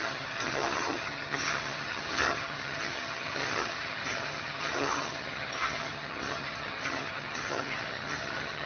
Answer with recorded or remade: remade